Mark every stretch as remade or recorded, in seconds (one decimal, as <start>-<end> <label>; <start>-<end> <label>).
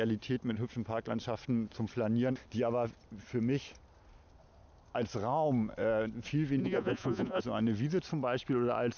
0.0-6.6 recorded; 6.6-7.4 remade; 7.4-9.0 recorded